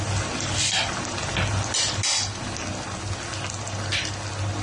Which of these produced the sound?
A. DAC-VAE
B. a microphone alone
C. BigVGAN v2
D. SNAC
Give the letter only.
B